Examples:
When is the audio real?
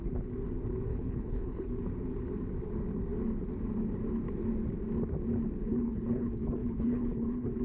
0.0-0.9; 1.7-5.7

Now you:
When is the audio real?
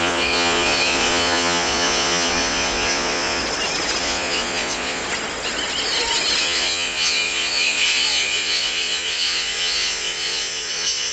3.4-4.0; 5.0-6.4